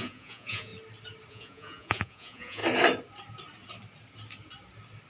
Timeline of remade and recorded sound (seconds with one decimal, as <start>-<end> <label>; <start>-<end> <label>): 0.0-0.7 remade; 0.7-1.3 recorded; 1.3-2.6 remade; 2.6-5.1 recorded